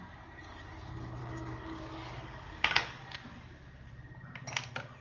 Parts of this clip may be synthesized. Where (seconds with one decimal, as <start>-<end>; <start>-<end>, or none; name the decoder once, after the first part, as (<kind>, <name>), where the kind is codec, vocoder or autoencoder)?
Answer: 1.2-3.0 (codec, DAC)